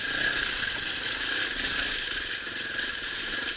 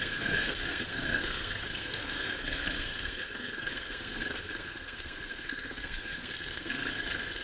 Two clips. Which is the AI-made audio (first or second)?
second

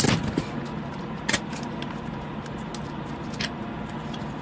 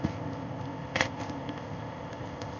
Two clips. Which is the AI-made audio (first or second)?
second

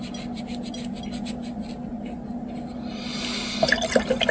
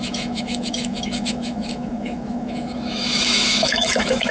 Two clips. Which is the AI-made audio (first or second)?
second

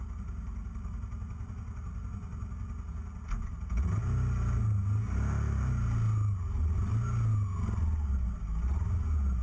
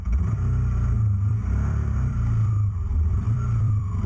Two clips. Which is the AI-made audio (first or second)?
second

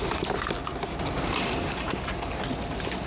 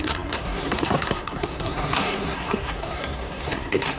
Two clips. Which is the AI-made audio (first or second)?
second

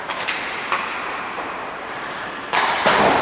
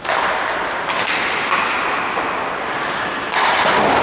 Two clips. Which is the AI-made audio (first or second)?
first